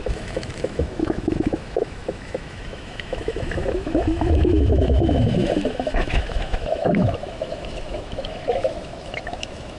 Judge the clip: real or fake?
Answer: fake